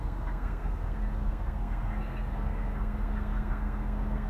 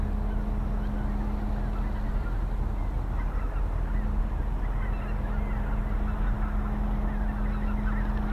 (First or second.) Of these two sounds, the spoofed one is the first